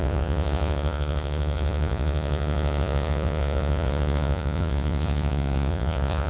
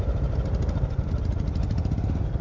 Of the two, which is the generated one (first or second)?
first